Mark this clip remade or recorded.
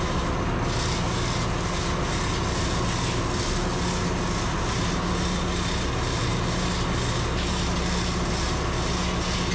recorded